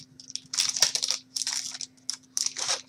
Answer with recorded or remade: recorded